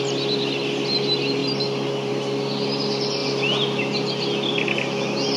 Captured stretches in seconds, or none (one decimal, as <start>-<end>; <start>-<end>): 0.0-5.4